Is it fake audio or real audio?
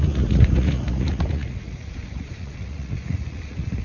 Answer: fake